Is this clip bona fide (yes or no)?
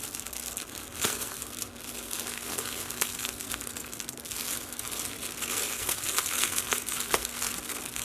no